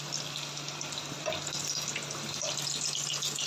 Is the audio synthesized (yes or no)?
no